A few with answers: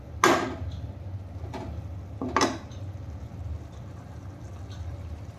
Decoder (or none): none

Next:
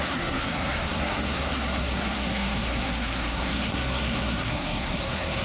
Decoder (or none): codec, SNAC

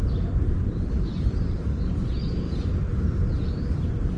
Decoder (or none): none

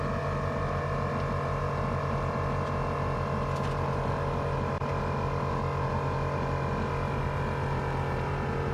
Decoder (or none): none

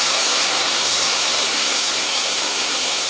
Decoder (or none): codec, SNAC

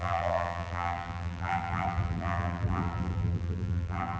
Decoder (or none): vocoder, BigVGAN v2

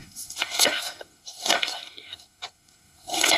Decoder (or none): codec, SNAC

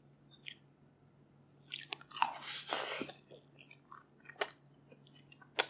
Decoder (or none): none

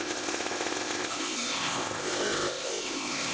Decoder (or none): codec, ZipCodec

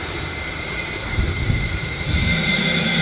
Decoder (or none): vocoder, BigVGAN v2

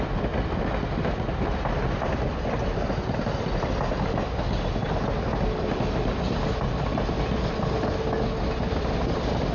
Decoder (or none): none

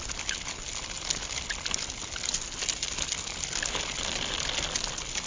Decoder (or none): none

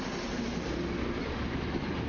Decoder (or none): none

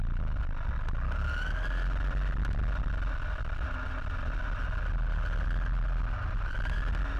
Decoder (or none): none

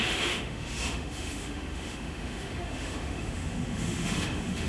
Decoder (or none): autoencoder, DAC-VAE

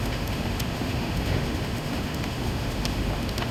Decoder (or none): autoencoder, DAC-VAE